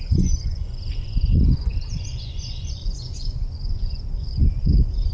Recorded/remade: remade